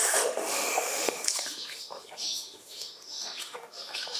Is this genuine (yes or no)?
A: no